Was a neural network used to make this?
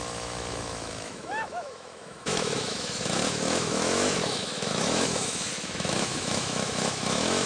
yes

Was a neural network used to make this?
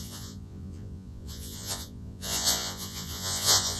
yes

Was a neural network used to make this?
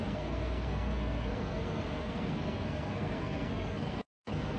yes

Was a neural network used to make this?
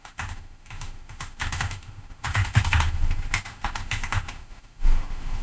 yes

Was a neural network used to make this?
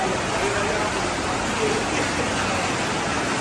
no